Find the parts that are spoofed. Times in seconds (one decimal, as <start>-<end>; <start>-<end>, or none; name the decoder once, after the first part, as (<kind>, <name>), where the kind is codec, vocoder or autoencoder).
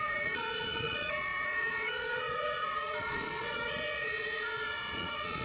0.0-5.4 (vocoder, Vocos)